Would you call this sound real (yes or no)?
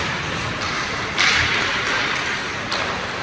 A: yes